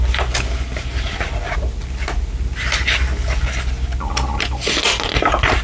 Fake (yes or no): no